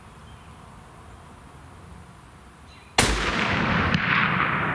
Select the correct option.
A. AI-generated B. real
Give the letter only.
B